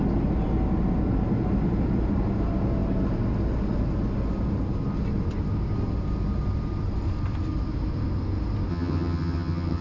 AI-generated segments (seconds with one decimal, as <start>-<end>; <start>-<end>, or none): 8.7-9.8